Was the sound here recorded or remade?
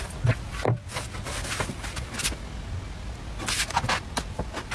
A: recorded